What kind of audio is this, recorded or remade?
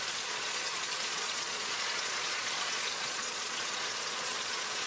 remade